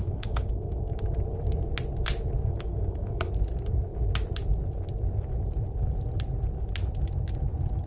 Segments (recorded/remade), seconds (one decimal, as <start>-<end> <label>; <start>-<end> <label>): 0.0-1.0 remade; 1.0-2.4 recorded; 2.4-3.3 remade; 3.3-7.9 recorded